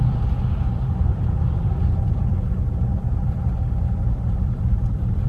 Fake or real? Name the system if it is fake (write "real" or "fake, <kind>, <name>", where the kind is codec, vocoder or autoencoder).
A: fake, vocoder, BigVGAN v2